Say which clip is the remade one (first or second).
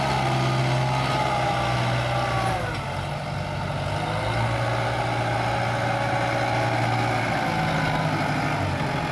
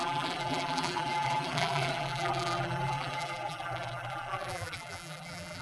second